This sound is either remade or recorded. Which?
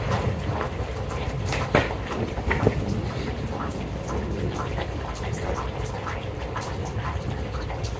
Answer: remade